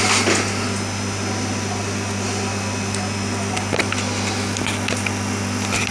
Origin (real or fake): real